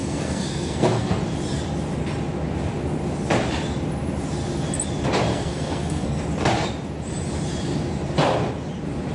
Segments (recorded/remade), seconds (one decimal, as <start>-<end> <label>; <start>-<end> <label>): 0.0-1.2 remade; 1.2-5.3 recorded; 5.3-6.2 remade; 6.2-9.1 recorded